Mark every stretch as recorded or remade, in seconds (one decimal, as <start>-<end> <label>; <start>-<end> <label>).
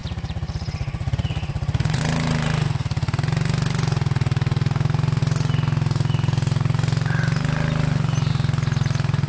0.0-2.0 remade; 2.0-9.3 recorded